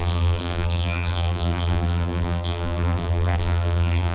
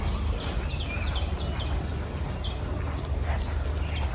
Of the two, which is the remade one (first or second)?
first